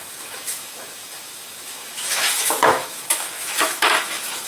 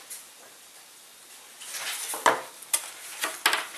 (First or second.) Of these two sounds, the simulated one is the first